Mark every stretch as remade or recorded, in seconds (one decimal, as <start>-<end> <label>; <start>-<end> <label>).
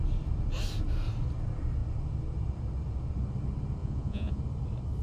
0.0-3.8 recorded; 3.8-4.4 remade; 4.4-5.0 recorded